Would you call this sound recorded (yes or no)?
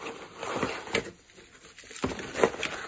yes